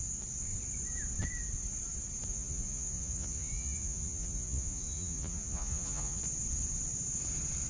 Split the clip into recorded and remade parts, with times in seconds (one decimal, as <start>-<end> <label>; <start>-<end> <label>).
0.0-2.3 recorded; 2.3-6.2 remade; 6.2-7.7 recorded